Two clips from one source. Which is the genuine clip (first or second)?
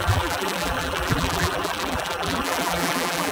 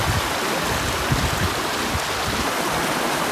second